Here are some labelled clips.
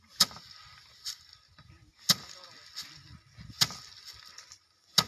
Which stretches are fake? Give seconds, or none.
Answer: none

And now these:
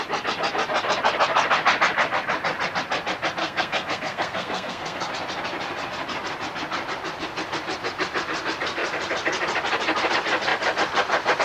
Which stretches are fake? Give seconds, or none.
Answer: 3.4-5.1 (codec, SNAC)